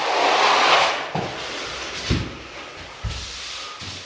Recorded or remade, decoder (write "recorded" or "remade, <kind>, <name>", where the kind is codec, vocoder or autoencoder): recorded